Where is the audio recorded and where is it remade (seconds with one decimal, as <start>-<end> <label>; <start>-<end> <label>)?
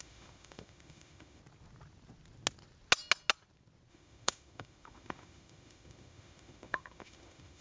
0.0-1.4 remade; 1.4-3.9 recorded; 3.9-7.6 remade